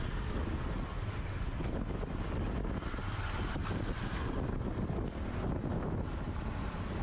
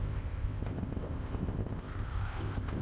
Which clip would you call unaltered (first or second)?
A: first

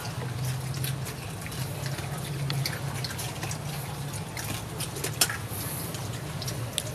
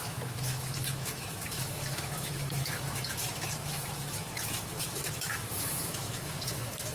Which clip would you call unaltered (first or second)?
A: first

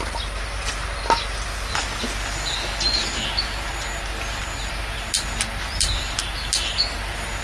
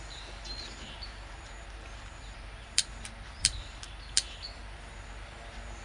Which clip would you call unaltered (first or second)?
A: first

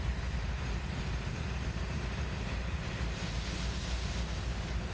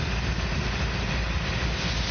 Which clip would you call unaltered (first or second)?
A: second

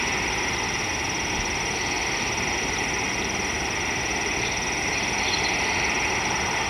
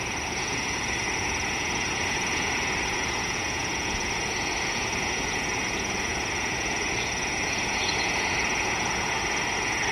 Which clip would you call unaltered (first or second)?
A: first